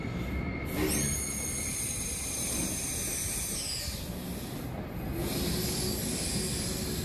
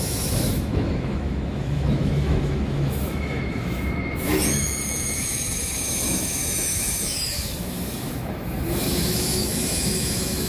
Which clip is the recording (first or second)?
first